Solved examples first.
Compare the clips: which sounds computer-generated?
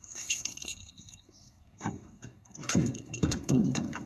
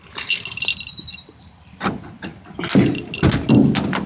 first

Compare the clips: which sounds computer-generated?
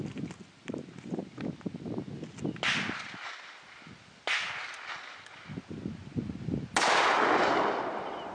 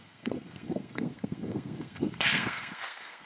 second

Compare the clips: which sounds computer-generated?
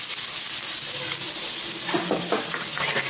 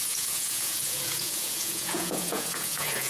second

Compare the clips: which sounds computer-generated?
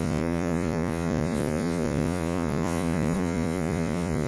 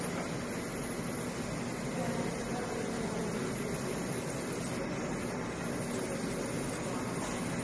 first